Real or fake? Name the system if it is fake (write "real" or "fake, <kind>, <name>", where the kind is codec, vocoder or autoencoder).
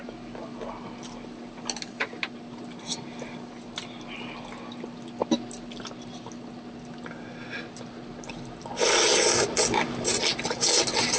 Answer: real